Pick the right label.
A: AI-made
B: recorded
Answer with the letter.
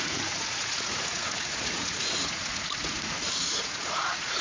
A